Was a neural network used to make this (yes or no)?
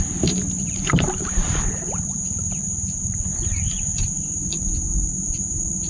yes